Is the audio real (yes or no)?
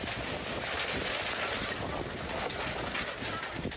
yes